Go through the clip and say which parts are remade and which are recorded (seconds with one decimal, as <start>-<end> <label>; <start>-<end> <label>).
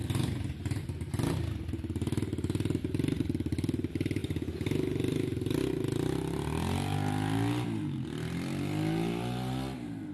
0.0-10.1 recorded